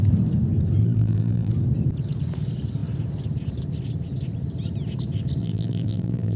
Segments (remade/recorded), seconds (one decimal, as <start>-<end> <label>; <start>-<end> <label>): 0.0-0.8 recorded; 0.8-1.5 remade; 1.5-5.4 recorded; 5.4-6.4 remade